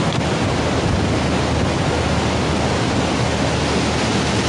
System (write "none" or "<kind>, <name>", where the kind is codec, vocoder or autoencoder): none